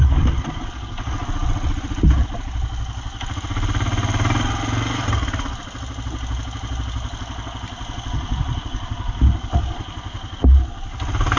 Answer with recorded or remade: recorded